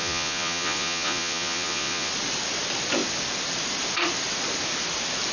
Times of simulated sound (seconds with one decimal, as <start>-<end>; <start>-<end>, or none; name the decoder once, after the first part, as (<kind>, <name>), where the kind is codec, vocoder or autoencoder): 0.0-2.1 (vocoder, Vocos)